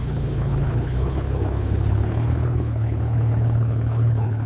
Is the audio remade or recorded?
remade